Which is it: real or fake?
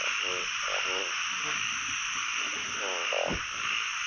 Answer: real